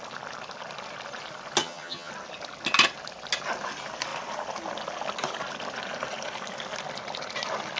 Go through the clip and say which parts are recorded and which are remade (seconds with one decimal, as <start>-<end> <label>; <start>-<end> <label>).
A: 0.0-1.6 recorded; 1.6-2.1 remade; 2.1-7.8 recorded